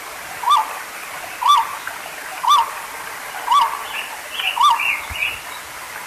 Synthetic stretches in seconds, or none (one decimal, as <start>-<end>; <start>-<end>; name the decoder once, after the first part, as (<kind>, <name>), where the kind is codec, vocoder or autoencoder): none